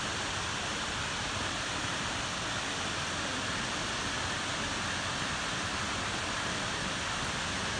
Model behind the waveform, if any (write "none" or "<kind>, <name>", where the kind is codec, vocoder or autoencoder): none